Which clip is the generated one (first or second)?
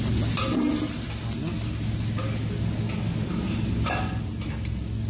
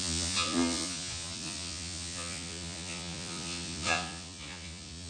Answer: second